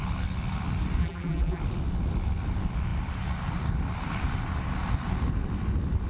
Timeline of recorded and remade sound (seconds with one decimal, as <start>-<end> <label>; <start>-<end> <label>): 0.0-1.0 recorded; 1.0-1.6 remade; 1.6-6.1 recorded